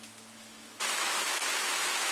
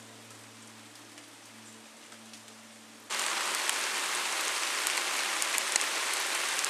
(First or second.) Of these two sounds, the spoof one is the first